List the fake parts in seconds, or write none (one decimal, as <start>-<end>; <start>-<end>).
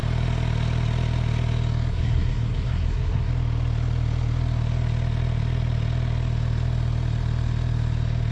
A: 1.9-3.3